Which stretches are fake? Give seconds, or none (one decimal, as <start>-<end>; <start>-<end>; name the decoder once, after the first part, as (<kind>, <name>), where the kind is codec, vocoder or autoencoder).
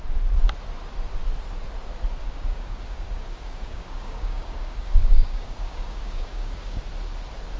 2.2-6.8 (codec, DAC)